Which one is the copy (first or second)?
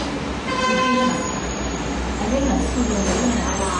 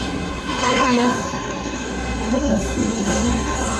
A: second